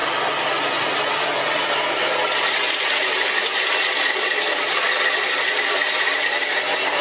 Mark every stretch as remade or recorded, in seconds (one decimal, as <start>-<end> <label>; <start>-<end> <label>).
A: 0.0-1.1 recorded; 1.1-2.6 remade; 2.6-4.8 recorded; 4.8-7.0 remade